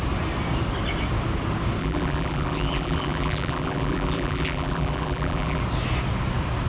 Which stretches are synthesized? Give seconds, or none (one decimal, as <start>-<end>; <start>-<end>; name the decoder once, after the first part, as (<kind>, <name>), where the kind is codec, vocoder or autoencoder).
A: 1.8-5.6 (vocoder, BigVGAN v2)